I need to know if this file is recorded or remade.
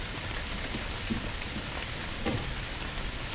remade